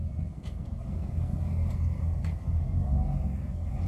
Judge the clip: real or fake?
fake